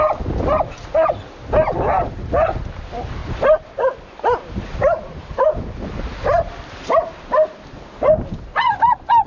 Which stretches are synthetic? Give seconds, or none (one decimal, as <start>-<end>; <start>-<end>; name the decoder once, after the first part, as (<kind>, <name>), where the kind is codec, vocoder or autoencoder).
3.2-5.3 (vocoder, BigVGAN v2)